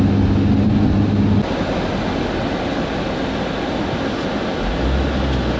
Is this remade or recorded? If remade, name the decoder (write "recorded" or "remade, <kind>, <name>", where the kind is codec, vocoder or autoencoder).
recorded